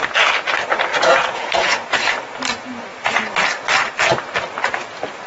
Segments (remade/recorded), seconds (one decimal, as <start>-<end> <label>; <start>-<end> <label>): 0.0-0.9 recorded; 0.9-2.2 remade; 2.2-5.3 recorded